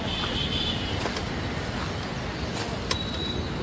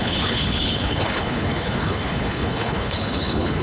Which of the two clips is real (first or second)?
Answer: first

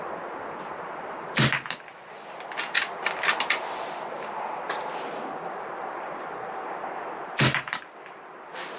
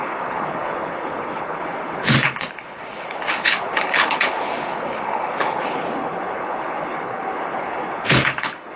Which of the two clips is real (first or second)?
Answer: first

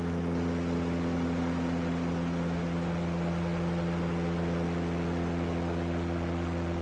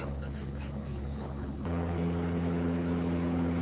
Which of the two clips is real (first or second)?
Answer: first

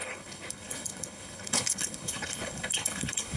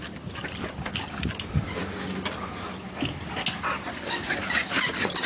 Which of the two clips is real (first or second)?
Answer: second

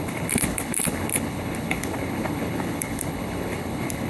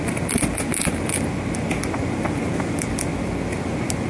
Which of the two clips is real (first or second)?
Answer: second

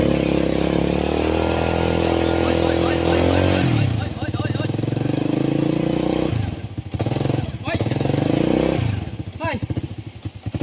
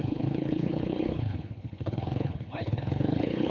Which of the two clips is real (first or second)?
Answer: first